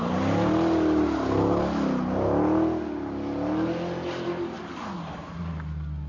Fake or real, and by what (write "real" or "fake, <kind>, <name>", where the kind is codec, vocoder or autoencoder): real